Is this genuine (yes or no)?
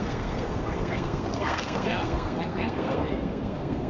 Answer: no